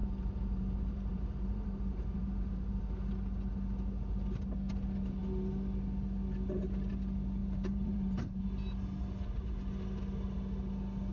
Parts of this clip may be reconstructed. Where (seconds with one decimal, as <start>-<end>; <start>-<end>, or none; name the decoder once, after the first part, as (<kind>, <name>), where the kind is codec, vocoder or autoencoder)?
0.0-2.8 (vocoder, BigVGAN v2); 7.4-8.4